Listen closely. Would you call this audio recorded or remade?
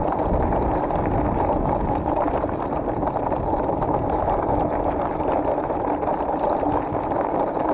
recorded